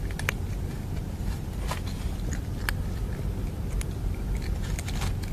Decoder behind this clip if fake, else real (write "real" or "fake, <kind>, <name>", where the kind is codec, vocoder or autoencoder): real